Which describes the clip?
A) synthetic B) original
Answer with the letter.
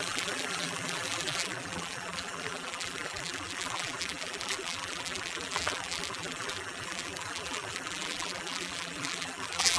A